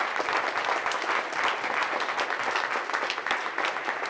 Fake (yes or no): no